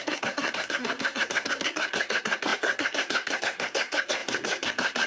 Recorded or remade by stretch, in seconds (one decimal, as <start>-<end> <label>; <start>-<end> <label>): 0.0-5.1 remade